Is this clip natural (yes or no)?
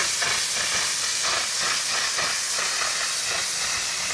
yes